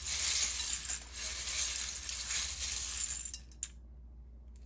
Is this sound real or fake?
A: real